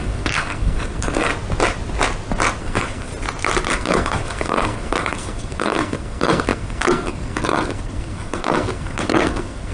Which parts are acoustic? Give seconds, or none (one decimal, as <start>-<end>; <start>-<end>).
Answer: 1.3-2.6; 3.1-3.7